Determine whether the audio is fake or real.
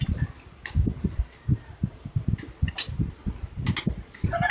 real